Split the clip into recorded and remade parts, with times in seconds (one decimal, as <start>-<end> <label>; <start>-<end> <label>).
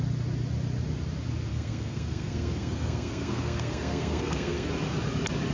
0.0-1.5 recorded; 1.5-4.7 remade; 4.7-5.5 recorded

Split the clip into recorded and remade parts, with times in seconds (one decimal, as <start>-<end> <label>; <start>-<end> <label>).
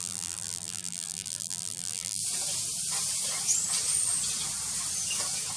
0.0-2.2 remade; 2.2-5.6 recorded